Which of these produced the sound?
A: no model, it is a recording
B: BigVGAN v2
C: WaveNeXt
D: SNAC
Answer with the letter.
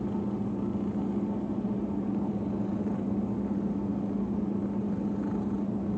A